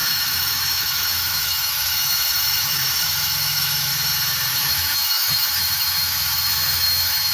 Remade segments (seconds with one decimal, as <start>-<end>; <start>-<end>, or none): 0.0-3.9; 4.5-7.3